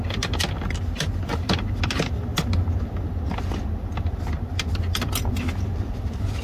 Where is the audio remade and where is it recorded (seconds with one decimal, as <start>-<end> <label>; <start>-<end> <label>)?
0.0-6.4 recorded